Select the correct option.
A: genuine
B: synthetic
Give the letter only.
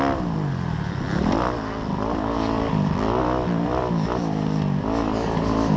A